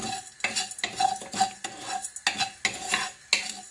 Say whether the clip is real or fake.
real